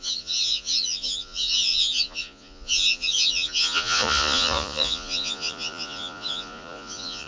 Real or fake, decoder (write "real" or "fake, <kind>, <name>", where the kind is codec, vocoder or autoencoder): fake, vocoder, Vocos